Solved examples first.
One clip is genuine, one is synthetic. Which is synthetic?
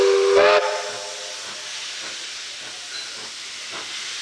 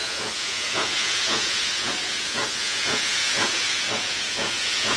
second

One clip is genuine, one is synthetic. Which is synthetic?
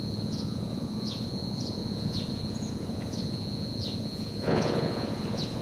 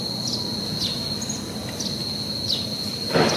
first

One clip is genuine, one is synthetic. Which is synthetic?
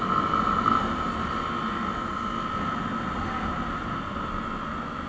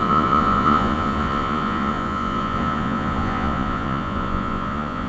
second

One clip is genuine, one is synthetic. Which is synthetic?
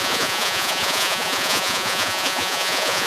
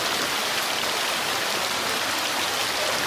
first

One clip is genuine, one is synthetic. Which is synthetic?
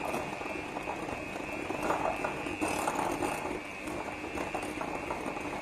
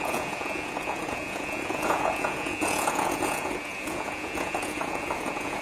second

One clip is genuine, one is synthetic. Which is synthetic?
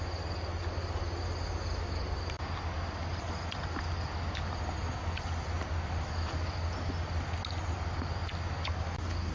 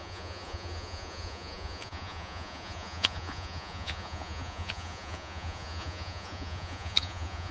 second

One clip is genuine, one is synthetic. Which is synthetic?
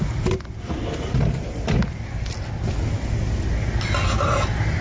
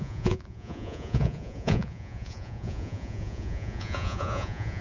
second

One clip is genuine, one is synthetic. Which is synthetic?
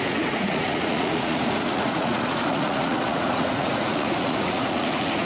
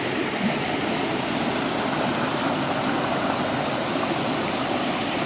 first